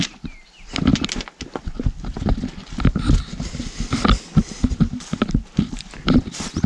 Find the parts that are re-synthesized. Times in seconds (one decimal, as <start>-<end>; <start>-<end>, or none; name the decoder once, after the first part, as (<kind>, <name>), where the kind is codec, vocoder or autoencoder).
none